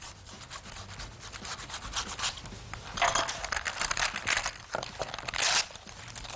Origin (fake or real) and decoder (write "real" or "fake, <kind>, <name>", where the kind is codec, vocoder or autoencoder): real